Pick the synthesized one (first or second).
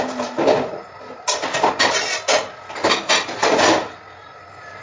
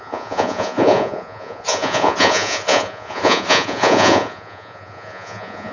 second